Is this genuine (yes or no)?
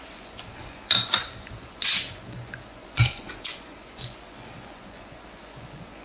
no